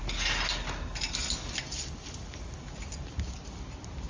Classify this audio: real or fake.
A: real